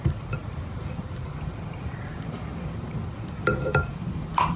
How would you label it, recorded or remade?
remade